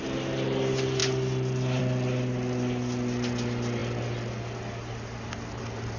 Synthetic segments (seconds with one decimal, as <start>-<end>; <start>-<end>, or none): none